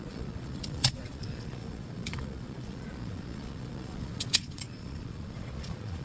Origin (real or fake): fake